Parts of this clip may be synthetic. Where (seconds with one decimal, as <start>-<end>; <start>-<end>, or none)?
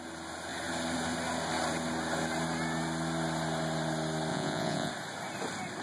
4.3-4.9